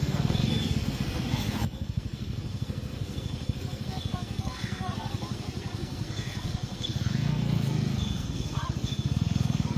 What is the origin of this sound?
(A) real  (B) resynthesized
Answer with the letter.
B